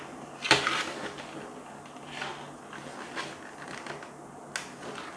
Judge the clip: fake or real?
real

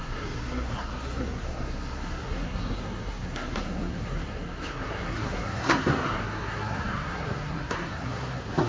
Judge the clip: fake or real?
fake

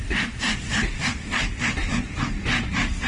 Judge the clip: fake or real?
real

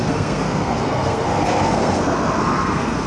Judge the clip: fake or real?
fake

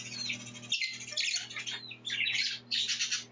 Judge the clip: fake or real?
real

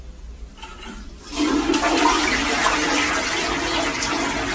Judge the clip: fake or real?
real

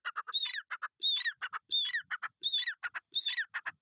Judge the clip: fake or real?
real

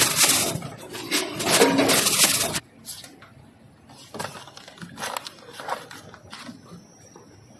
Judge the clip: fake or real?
real